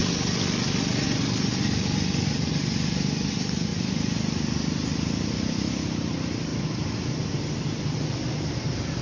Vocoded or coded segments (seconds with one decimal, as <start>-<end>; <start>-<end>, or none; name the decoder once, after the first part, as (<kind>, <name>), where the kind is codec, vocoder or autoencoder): 0.0-9.0 (vocoder, BigVGAN v2)